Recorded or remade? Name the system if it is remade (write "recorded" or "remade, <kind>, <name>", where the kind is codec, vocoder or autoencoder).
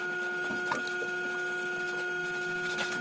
recorded